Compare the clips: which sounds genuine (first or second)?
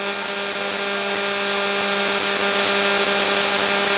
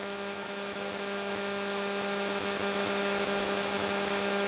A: first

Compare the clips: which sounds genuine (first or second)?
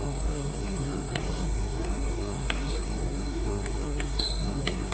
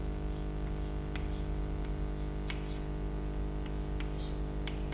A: second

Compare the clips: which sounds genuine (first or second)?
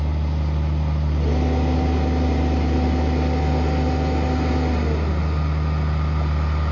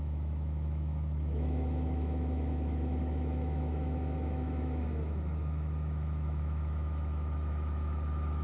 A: first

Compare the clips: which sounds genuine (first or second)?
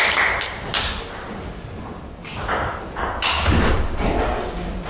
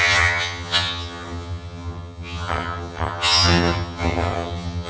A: first